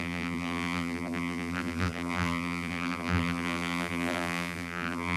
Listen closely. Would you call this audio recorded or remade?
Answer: remade